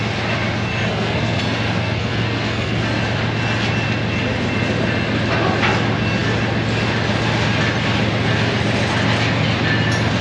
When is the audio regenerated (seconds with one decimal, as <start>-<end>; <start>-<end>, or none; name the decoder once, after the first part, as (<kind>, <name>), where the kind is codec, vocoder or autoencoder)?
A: 0.7-1.4 (codec, SNAC); 1.8-2.8